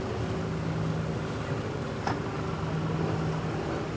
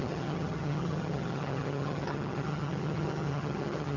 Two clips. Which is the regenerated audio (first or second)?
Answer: second